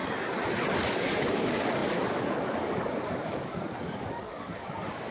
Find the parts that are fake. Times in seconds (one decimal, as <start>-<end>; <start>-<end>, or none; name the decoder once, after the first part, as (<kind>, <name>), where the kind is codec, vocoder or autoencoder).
0.8-5.1 (codec, DAC)